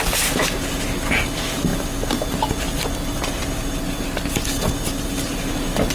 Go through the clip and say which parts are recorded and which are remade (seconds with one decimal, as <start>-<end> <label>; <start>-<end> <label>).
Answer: 0.0-5.9 recorded